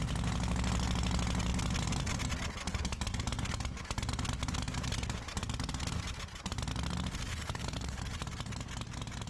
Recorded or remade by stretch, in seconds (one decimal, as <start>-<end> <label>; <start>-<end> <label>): 0.0-7.3 recorded; 7.3-8.0 remade; 8.0-9.3 recorded